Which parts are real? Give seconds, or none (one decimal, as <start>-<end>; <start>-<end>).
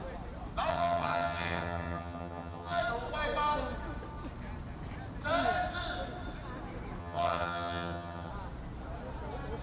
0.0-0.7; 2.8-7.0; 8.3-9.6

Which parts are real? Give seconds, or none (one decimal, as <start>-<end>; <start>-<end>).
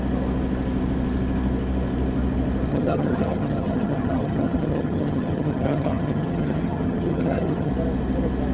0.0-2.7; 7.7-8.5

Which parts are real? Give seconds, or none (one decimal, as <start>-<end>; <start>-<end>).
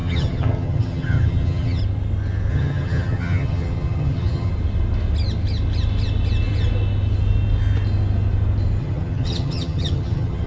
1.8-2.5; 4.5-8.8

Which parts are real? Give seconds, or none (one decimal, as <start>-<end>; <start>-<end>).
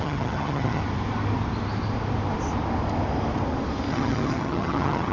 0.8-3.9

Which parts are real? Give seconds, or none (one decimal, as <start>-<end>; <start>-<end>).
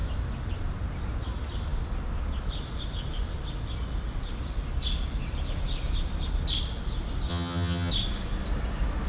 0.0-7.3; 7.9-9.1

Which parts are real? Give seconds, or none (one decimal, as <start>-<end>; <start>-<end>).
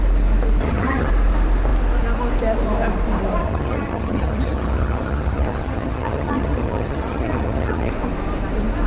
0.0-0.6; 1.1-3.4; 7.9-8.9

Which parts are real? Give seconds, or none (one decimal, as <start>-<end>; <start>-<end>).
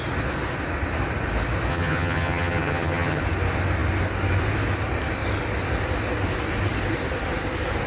0.0-1.7; 3.2-7.9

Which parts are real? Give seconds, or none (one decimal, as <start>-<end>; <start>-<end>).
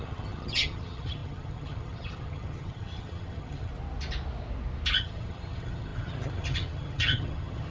3.7-5.0